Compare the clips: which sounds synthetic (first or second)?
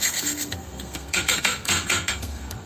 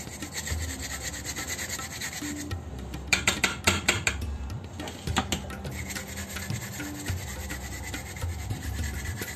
first